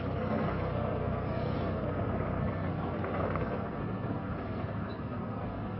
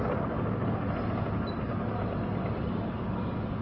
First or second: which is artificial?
first